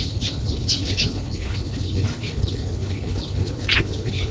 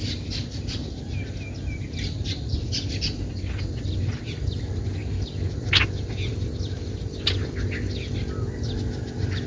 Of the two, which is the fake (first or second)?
first